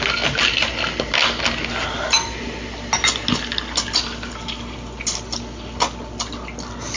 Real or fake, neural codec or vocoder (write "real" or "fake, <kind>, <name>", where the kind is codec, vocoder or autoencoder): real